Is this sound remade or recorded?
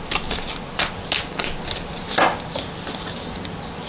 recorded